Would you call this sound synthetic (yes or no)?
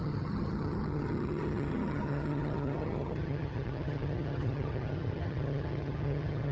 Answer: yes